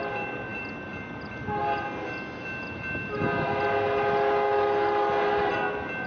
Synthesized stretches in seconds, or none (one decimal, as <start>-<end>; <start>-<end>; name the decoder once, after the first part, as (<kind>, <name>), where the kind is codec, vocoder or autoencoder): none